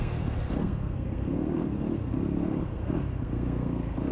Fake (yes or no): yes